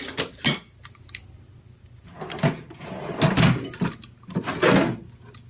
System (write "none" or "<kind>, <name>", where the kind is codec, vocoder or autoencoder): none